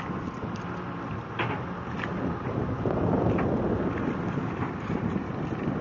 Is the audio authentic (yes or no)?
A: yes